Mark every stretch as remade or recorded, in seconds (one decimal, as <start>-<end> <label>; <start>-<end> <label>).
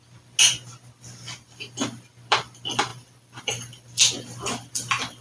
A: 0.0-2.9 recorded; 2.9-5.2 remade